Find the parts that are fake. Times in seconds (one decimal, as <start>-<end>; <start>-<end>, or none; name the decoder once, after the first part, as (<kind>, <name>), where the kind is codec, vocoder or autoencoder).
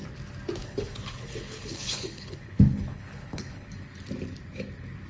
0.6-3.7 (codec, HILCodec)